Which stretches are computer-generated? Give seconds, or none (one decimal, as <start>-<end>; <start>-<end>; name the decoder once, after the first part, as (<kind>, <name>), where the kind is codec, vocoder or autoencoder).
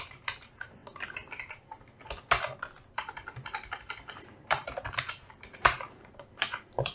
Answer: 0.0-0.8 (vocoder, BigVGAN v2); 2.9-6.9